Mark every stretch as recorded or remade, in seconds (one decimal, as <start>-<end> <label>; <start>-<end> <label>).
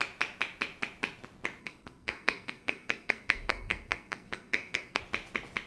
0.0-1.6 recorded; 1.6-5.0 remade; 5.0-5.7 recorded